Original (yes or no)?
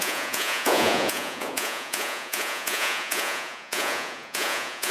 no